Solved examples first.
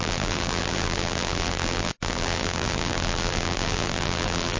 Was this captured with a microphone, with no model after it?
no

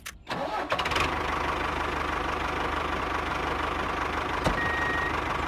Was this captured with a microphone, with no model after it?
yes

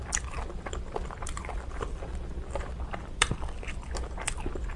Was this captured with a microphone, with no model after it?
no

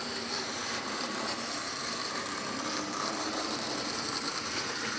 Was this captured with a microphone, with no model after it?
no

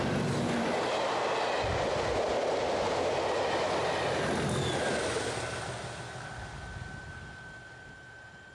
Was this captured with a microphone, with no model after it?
yes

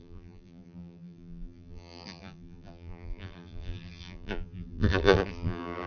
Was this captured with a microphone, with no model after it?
no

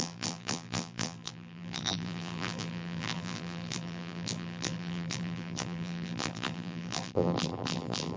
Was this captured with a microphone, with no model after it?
no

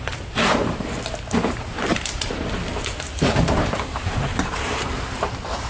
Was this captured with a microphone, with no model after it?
no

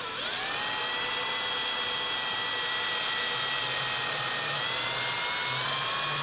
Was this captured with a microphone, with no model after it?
yes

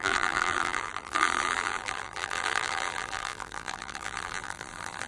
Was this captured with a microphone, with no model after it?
no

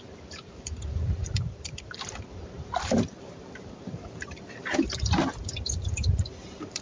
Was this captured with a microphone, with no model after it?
no